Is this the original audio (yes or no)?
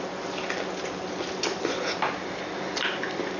yes